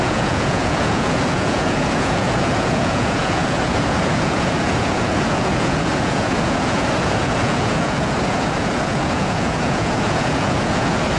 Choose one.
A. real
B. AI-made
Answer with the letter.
B